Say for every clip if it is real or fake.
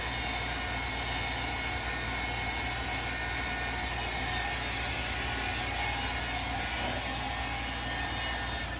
real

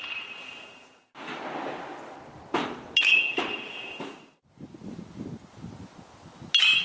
real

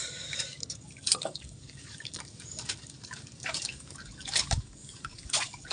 fake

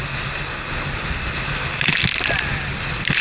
real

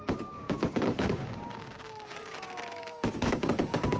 fake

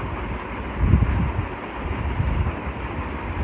real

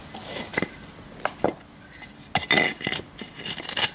real